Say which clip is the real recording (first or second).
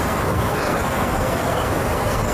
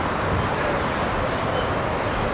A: second